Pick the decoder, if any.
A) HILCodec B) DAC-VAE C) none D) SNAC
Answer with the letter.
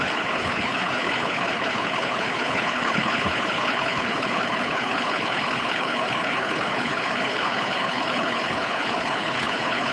A